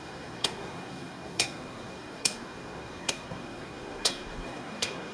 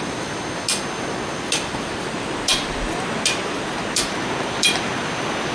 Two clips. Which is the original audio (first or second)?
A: second